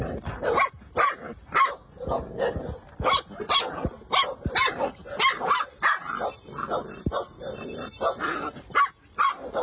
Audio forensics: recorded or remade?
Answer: recorded